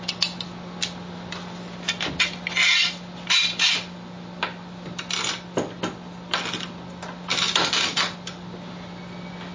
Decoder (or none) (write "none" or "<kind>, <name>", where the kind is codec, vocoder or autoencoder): none